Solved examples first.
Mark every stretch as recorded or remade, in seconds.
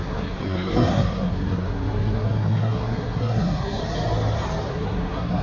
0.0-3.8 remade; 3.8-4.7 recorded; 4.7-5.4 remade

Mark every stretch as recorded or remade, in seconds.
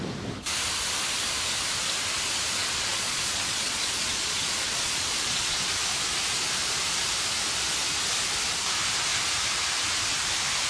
0.0-2.6 recorded; 2.6-5.7 remade; 5.7-10.7 recorded